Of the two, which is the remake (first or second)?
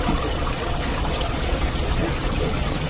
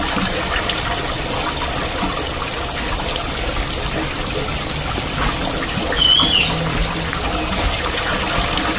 first